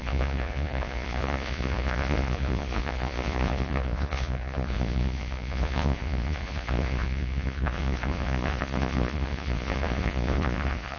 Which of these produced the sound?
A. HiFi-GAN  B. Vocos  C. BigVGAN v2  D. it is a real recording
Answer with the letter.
B